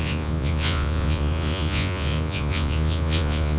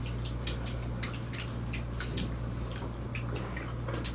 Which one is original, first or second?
second